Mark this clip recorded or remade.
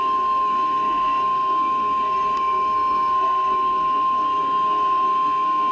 remade